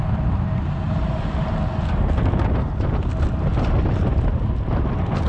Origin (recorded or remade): recorded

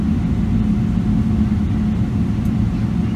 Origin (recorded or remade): recorded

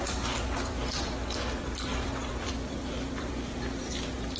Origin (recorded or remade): remade